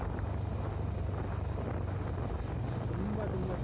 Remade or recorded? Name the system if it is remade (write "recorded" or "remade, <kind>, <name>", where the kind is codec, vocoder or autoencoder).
recorded